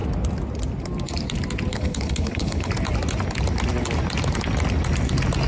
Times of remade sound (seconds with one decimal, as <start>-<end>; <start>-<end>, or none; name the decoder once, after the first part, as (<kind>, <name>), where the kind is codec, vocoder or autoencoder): 1.7-2.7 (codec, HILCodec)